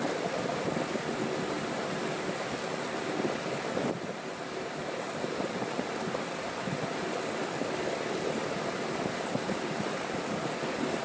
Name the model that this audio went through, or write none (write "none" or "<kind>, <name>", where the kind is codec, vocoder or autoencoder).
none